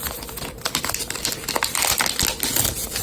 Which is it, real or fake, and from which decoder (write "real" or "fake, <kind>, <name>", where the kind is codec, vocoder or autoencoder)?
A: real